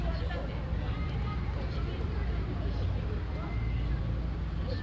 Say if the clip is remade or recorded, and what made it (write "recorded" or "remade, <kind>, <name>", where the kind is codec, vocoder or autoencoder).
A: recorded